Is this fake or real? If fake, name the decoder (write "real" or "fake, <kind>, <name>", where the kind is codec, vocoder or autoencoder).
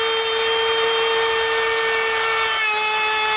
real